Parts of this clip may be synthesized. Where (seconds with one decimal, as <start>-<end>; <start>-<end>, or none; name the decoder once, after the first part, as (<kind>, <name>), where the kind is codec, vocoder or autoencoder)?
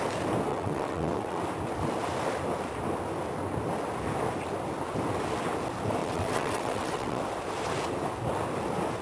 0.5-1.4 (vocoder, WaveNeXt); 6.0-7.2